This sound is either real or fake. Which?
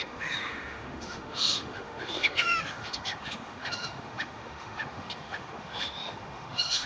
fake